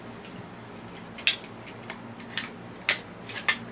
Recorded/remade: recorded